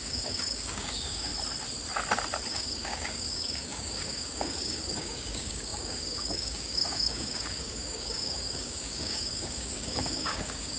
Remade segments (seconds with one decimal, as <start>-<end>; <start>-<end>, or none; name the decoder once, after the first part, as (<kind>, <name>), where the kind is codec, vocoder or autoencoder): 0.0-1.3 (codec, DAC); 2.5-10.8